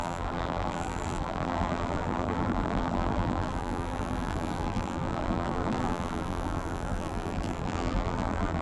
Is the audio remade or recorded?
remade